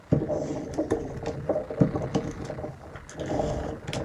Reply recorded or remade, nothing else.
recorded